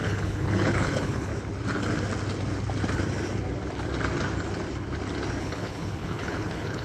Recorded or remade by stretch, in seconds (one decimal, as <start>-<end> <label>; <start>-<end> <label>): 0.0-1.3 remade; 1.3-5.4 recorded; 5.4-6.8 remade